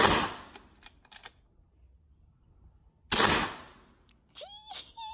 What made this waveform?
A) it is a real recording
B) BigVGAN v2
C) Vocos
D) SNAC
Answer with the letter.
A